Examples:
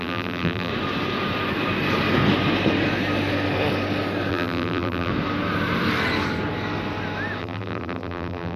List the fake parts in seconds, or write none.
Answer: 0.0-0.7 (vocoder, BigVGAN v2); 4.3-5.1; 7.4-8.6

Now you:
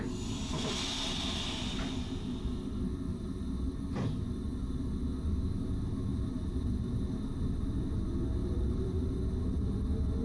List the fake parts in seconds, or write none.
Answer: 3.1-3.6 (vocoder, BigVGAN v2); 6.1-7.3; 8.4-9.0

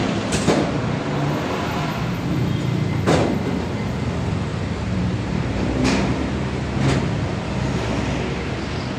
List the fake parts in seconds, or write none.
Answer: 0.0-0.8 (vocoder, BigVGAN v2); 4.5-6.3

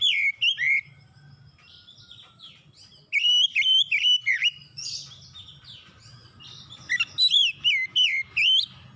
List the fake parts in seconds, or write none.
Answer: 1.4-4.3 (vocoder, BigVGAN v2)

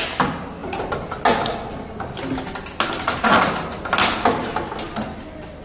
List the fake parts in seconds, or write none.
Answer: none

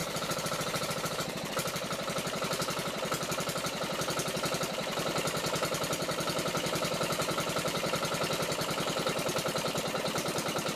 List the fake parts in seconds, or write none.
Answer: 0.0-1.5 (vocoder, BigVGAN v2)